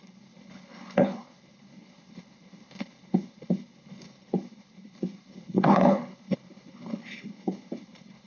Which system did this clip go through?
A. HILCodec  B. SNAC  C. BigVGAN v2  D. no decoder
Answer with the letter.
A